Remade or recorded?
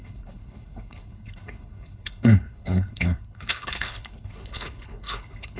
remade